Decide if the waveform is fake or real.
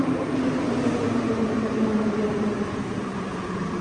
fake